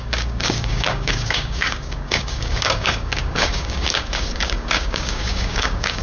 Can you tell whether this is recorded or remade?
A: remade